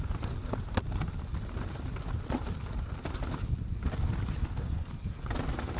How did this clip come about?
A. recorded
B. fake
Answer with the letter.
A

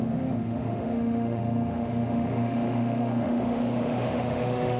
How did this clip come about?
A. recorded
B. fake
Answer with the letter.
B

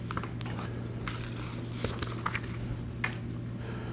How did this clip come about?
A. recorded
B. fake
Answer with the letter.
A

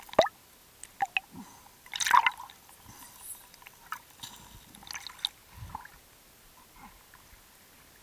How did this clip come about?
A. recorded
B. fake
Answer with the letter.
A